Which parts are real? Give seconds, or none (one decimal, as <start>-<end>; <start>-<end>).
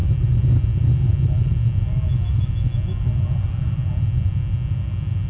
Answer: 0.0-5.3